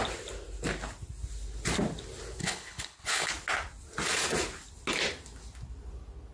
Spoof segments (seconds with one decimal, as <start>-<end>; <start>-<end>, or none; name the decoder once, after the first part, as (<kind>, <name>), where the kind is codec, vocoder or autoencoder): 2.4-3.3 (codec, HILCodec)